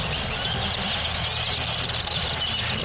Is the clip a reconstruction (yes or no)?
no